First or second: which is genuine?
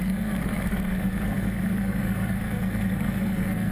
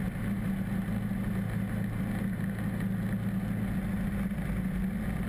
second